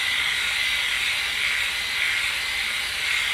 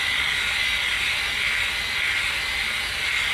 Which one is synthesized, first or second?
first